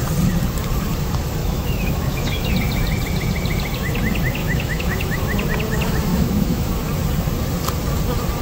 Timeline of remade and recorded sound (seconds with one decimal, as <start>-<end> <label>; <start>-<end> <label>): 0.0-1.4 recorded; 1.4-2.5 remade; 2.5-4.4 recorded; 4.4-5.2 remade; 5.2-6.1 recorded; 6.1-6.7 remade; 6.7-8.4 recorded